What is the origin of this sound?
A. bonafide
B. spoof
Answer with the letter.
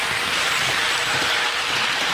B